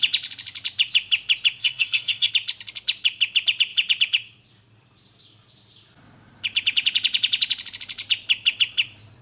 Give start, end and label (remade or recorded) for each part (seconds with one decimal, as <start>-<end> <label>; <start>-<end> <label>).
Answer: 0.0-1.6 recorded; 1.6-2.3 remade; 2.3-9.2 recorded